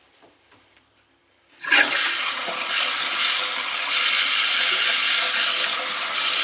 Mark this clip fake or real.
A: fake